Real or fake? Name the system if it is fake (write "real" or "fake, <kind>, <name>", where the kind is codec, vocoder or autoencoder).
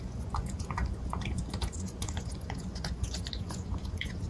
fake, vocoder, Vocos